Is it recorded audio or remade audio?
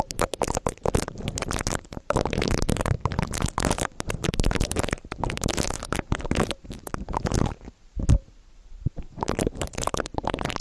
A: remade